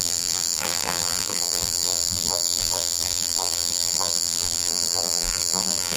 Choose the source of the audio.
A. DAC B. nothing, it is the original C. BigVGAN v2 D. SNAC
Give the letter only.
C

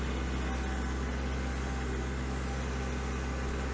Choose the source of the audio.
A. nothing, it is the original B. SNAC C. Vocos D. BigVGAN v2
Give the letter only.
A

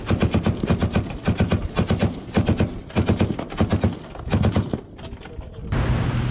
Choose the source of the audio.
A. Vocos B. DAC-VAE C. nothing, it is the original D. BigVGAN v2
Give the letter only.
C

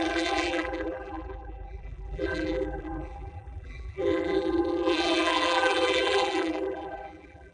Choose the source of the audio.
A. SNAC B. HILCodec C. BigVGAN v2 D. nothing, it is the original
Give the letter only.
C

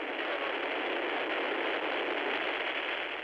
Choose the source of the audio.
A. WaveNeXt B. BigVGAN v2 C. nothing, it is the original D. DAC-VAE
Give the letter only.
C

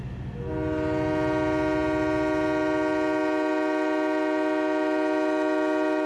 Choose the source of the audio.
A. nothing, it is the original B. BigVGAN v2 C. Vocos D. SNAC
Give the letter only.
A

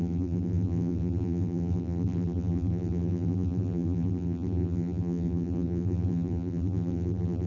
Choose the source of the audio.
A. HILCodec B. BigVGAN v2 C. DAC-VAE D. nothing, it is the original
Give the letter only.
B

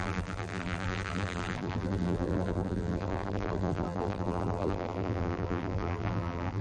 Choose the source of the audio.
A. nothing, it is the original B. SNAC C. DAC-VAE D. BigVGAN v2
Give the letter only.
D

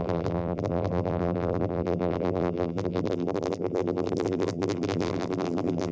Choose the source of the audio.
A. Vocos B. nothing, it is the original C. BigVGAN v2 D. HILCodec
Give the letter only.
C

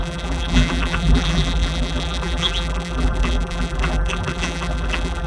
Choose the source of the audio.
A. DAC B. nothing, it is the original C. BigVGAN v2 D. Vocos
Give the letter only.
C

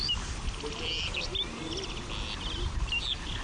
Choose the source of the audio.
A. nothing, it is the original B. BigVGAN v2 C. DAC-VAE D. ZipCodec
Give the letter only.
A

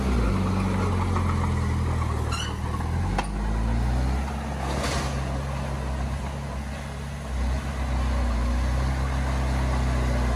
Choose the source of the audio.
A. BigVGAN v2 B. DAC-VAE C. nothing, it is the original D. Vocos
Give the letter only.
C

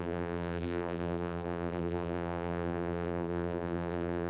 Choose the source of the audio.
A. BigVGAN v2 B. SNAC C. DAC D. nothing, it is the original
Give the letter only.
A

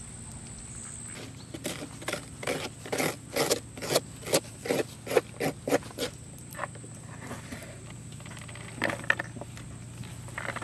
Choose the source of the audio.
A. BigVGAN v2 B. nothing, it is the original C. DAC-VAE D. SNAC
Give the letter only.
B